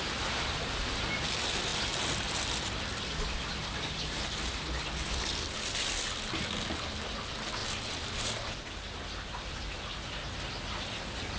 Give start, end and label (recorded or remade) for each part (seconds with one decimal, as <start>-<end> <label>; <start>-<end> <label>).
0.0-11.4 recorded